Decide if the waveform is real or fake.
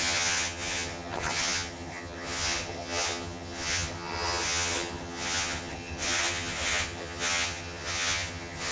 fake